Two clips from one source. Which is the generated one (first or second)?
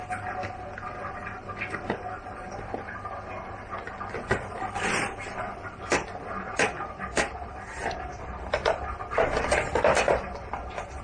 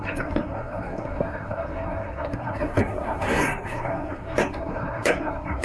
second